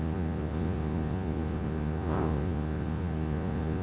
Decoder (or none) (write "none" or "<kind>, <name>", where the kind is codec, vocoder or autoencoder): vocoder, Vocos